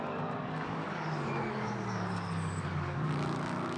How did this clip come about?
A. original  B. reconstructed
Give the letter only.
B